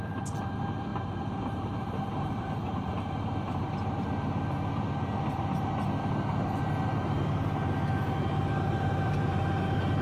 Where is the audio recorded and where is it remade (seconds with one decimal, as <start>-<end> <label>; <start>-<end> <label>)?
0.0-0.9 recorded; 0.9-2.9 remade; 2.9-10.0 recorded